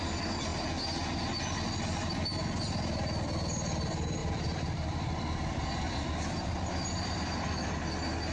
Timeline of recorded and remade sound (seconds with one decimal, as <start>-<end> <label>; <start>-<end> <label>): 0.0-4.2 recorded; 4.2-7.8 remade; 7.8-8.3 recorded